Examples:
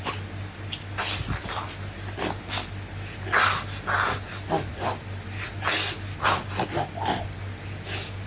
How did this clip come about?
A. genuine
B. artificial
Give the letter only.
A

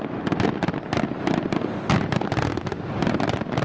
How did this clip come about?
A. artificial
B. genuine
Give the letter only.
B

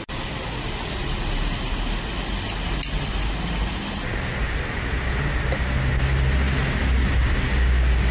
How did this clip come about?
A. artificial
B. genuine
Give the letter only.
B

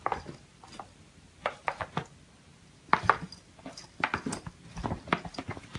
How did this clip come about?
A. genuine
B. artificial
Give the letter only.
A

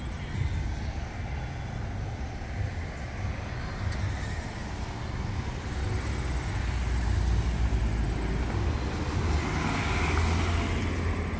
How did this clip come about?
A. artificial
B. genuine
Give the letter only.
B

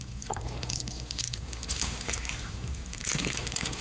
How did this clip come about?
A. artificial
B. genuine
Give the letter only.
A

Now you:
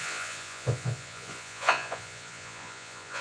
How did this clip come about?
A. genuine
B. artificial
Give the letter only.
B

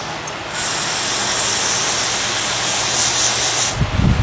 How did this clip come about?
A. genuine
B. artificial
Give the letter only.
A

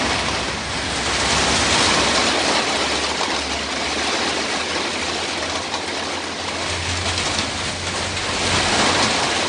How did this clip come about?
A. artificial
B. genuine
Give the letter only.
B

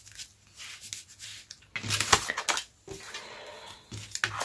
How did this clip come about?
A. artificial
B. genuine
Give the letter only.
B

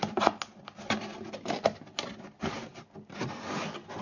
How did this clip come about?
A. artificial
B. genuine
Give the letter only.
B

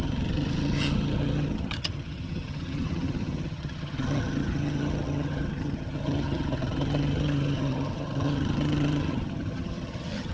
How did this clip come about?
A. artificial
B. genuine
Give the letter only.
A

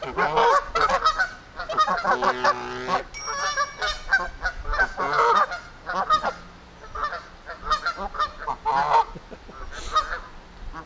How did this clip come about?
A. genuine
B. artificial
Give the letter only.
A